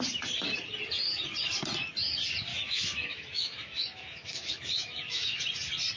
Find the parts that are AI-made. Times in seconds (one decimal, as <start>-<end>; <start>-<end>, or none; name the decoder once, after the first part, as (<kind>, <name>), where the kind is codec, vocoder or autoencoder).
2.5-5.4 (autoencoder, DAC-VAE)